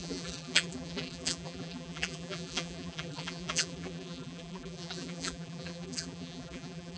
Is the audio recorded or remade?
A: remade